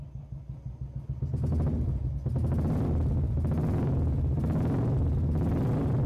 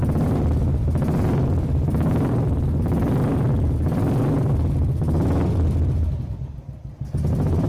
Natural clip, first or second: first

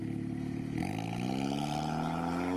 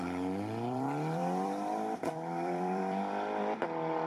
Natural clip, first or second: first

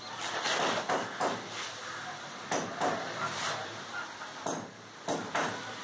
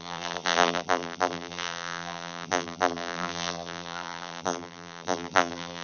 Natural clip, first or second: first